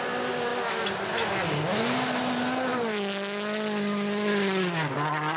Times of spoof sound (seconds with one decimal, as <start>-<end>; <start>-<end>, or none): none